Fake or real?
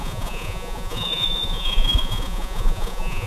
fake